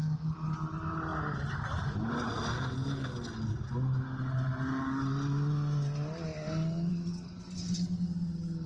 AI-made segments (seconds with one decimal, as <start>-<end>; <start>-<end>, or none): none